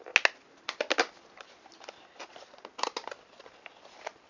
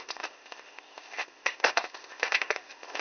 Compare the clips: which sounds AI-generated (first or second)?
second